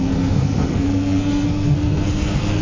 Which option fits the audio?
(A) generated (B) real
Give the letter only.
A